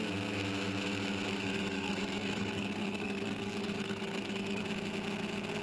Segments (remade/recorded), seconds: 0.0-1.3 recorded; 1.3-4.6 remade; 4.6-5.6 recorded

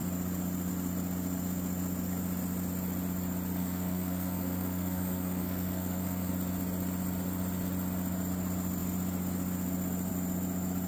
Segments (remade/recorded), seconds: 0.0-3.6 recorded; 3.6-6.3 remade; 6.3-10.9 recorded

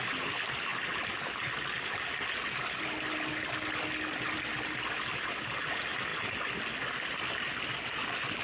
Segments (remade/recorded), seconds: 0.0-8.4 recorded

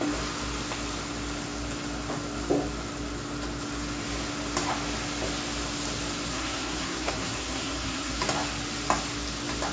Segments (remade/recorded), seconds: 0.0-6.3 recorded; 6.3-8.2 remade; 8.2-9.7 recorded

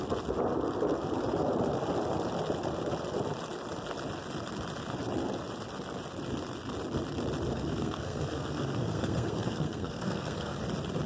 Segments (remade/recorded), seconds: 0.0-7.5 recorded; 7.5-10.6 remade; 10.6-11.1 recorded

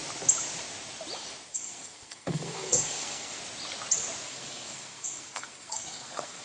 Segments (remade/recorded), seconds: 0.0-1.5 recorded; 1.5-3.4 remade; 3.4-4.2 recorded; 4.2-6.4 remade

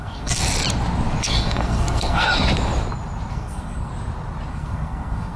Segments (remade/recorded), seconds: 0.0-0.4 remade; 0.4-1.2 recorded; 1.2-2.3 remade; 2.3-3.3 recorded; 3.3-3.9 remade; 3.9-4.5 recorded; 4.5-5.4 remade